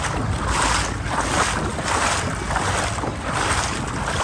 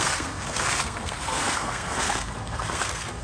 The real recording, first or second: first